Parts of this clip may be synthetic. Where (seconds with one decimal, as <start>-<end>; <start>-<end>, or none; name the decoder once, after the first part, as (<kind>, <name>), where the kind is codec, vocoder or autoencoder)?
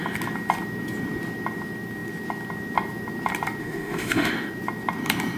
3.6-4.3 (autoencoder, DAC-VAE)